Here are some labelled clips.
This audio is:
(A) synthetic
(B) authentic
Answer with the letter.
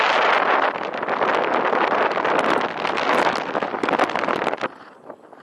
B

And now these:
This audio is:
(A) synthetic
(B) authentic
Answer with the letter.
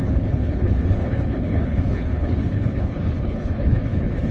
A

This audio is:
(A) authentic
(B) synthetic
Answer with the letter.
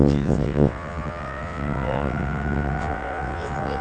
B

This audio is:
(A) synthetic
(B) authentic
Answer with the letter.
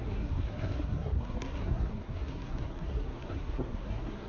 A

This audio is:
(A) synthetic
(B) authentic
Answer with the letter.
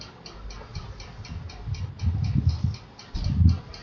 B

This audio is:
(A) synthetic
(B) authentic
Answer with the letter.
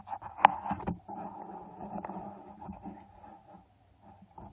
B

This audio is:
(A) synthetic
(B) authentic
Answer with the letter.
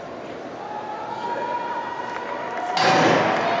B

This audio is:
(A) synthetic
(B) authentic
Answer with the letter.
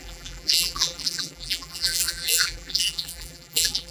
A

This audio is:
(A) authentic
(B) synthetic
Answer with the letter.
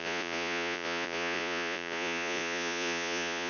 B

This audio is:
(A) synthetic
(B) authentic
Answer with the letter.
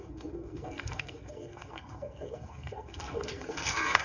A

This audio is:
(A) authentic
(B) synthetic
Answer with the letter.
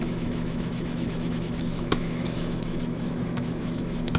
B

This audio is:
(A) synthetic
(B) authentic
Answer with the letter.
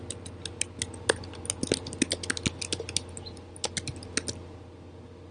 B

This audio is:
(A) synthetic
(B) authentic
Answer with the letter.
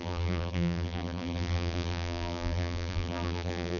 A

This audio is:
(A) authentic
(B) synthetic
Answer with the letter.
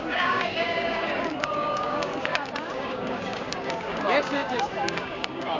B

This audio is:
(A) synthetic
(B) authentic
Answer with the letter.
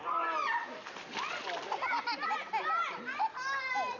B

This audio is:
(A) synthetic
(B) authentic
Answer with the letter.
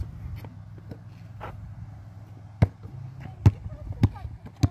B